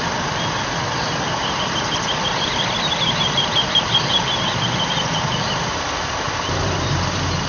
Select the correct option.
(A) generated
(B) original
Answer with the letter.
A